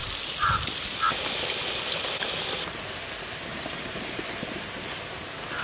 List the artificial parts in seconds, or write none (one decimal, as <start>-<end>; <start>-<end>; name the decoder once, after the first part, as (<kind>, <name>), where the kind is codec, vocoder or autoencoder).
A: 3.5-4.2 (vocoder, BigVGAN v2)